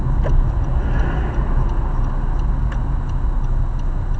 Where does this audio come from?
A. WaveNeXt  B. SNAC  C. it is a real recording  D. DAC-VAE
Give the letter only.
C